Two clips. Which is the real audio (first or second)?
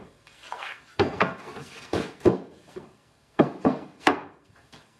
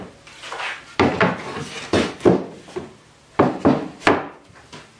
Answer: second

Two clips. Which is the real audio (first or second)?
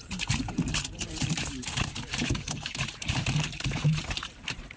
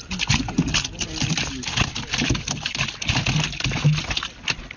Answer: second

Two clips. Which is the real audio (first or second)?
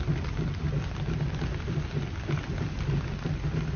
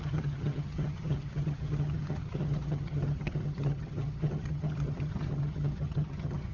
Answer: first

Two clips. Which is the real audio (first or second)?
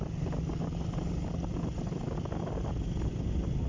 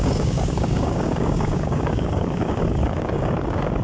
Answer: first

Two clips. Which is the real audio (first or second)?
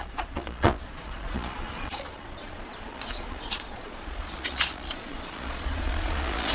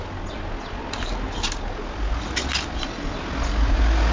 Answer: second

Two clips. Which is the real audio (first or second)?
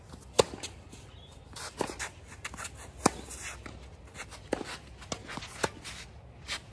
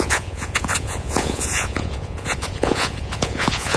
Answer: first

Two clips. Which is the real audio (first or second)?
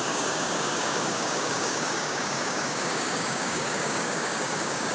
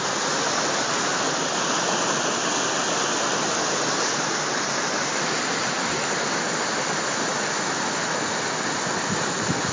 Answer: second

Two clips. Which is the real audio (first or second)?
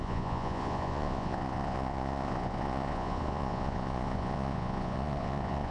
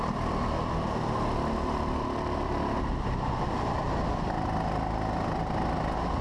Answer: second